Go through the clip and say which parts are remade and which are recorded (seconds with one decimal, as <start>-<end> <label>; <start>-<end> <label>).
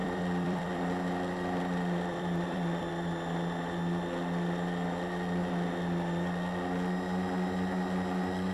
0.0-2.9 remade; 2.9-8.5 recorded